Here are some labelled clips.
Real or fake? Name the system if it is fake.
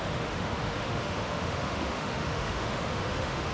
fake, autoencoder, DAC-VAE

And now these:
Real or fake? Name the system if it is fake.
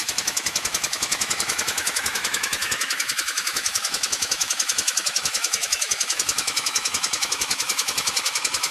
fake, autoencoder, DAC-VAE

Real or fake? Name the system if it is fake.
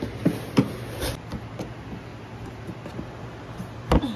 real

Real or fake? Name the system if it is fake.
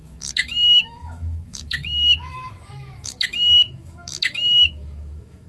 fake, autoencoder, DAC-VAE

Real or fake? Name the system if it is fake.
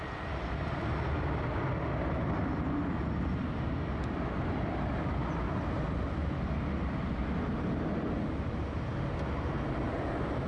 real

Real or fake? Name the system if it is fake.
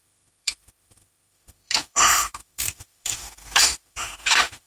fake, autoencoder, DAC-VAE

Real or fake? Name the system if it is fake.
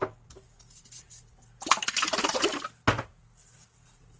real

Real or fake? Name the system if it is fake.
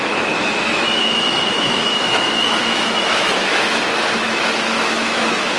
fake, autoencoder, DAC-VAE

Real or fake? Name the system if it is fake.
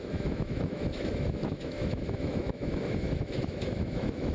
fake, autoencoder, DAC-VAE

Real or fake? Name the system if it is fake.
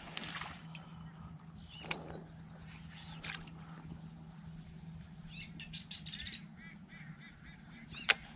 real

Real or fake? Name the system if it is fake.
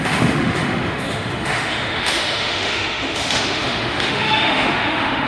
fake, autoencoder, DAC-VAE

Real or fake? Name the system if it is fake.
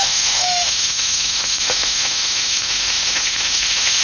fake, autoencoder, DAC-VAE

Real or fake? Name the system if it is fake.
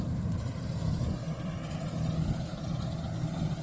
real